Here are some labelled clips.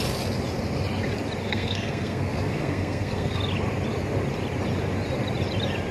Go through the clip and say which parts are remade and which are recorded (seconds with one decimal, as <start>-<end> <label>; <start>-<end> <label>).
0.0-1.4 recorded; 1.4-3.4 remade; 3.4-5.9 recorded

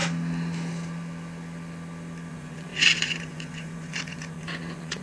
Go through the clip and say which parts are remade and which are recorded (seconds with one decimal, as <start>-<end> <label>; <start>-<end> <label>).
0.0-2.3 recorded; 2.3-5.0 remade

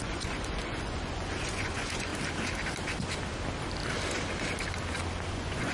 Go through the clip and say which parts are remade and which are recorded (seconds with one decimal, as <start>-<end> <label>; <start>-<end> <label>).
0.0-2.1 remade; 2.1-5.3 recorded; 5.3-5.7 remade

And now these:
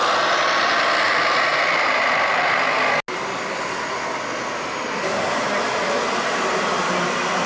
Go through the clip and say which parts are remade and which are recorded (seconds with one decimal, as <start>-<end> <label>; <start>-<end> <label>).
0.0-7.5 recorded